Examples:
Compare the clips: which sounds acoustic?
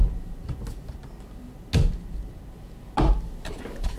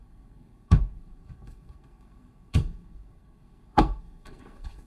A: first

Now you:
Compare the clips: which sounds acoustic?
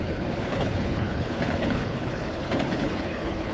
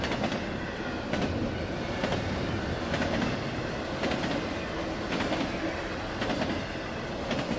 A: second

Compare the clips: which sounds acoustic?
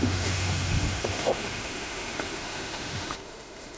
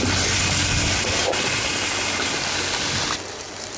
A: second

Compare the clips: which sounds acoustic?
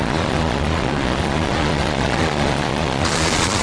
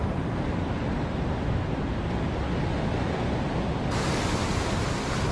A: second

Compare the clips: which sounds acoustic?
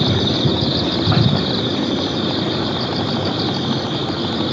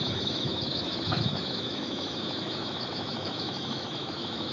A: first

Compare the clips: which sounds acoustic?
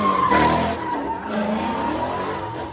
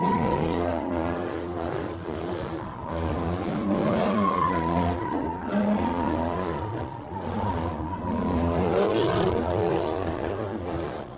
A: first